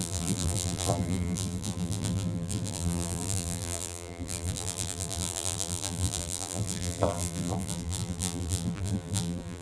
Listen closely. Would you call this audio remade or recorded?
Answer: remade